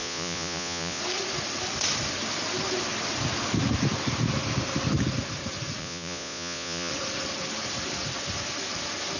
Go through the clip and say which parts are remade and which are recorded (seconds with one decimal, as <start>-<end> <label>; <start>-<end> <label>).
0.0-1.0 remade; 1.0-5.8 recorded; 5.8-6.9 remade; 6.9-9.2 recorded

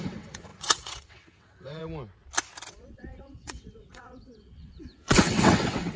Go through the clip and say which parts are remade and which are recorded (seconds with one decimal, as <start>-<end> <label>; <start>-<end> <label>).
0.0-1.8 remade; 1.8-2.7 recorded; 2.7-6.0 remade

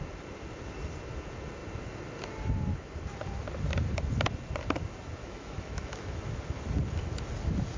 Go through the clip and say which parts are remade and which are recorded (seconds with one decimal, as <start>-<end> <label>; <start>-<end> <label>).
0.0-5.2 recorded; 5.2-6.2 remade; 6.2-7.8 recorded

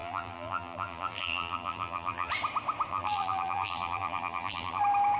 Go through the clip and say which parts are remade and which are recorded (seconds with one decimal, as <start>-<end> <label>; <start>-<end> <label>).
0.0-2.3 remade; 2.3-2.9 recorded; 2.9-4.8 remade; 4.8-5.2 recorded